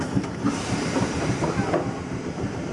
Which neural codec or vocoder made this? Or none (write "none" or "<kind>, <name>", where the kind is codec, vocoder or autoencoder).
vocoder, BigVGAN v2